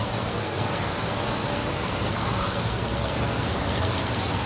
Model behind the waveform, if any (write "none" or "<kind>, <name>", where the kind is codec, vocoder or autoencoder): codec, SNAC